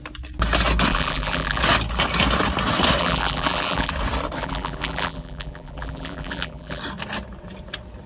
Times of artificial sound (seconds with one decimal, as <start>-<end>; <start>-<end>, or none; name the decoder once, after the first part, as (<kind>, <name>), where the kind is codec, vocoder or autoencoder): 0.9-1.6 (vocoder, BigVGAN v2); 3.0-3.9; 4.4-6.8